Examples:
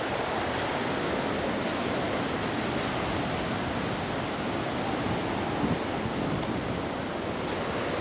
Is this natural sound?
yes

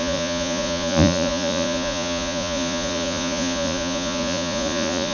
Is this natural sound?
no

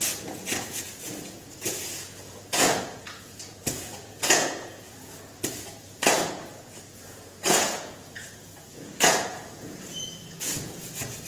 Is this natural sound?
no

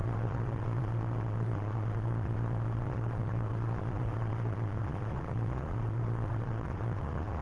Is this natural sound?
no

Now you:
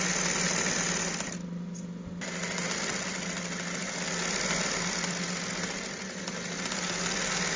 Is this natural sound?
yes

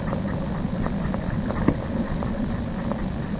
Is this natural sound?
yes